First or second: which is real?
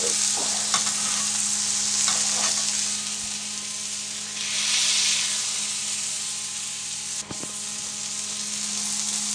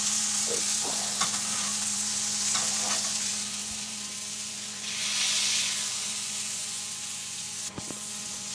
first